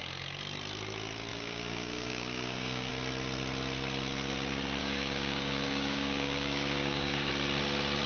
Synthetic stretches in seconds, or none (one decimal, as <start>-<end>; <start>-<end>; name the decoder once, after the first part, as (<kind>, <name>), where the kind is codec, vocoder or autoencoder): 1.3-2.9 (codec, DAC); 4.8-7.3